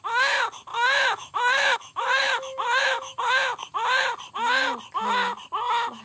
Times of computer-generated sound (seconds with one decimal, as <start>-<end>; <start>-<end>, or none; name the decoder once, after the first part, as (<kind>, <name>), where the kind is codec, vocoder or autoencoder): 0.7-3.2 (autoencoder, DAC-VAE)